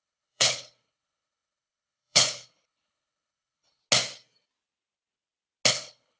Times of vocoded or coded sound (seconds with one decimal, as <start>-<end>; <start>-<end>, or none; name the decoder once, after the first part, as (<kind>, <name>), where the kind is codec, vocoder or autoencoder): 0.0-3.8 (codec, HILCodec); 5.7-6.2